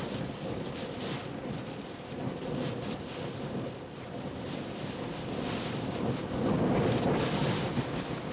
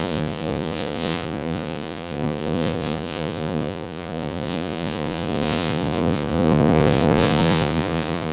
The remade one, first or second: second